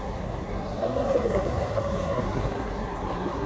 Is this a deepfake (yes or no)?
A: yes